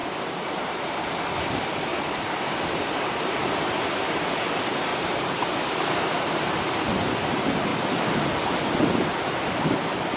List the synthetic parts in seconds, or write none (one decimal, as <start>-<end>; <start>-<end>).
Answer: 0.0-1.3; 1.9-4.4; 4.9-7.2